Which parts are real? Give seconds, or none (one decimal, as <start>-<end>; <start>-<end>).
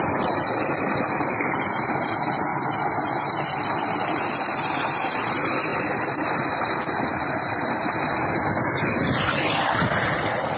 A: 0.0-10.6